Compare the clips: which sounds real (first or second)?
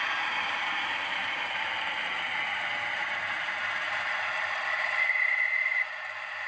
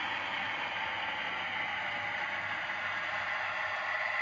second